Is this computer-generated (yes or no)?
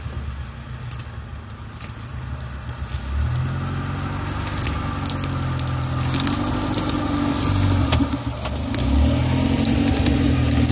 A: no